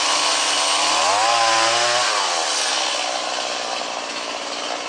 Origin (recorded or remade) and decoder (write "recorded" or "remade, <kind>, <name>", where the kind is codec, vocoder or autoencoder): recorded